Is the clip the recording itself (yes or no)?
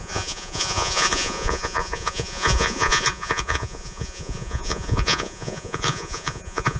no